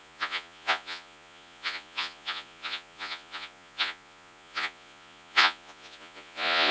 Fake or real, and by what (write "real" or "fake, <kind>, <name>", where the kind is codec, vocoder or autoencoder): fake, vocoder, Vocos